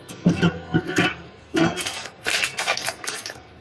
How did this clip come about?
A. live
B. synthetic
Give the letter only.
B